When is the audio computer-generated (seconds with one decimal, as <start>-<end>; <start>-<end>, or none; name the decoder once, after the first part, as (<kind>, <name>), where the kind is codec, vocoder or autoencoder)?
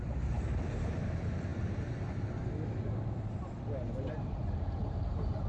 0.0-1.5 (vocoder, BigVGAN v2); 3.5-5.5